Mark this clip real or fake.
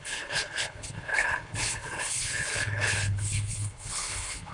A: fake